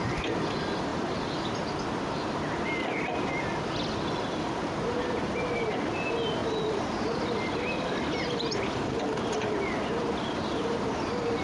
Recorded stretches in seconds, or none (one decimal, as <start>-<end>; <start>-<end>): 0.0-0.9; 1.5-6.4; 6.9-11.4